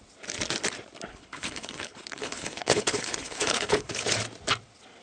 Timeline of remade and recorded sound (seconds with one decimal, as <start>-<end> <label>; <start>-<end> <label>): 0.0-1.1 recorded; 1.1-4.1 remade; 4.1-5.0 recorded